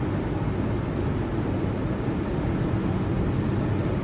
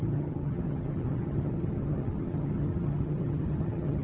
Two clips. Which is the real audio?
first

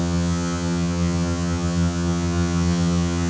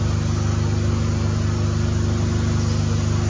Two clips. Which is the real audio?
second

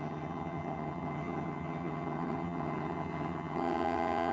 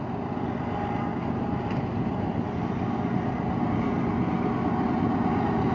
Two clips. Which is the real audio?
second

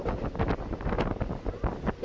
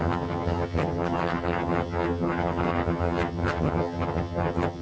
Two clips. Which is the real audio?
first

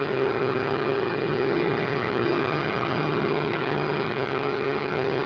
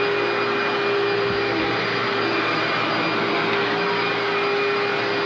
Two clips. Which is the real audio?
second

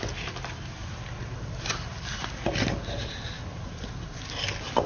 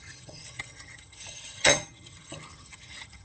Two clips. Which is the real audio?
first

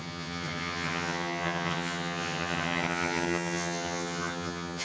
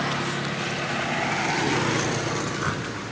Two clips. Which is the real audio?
second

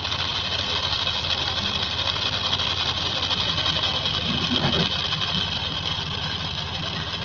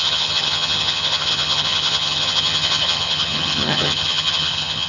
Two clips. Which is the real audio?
first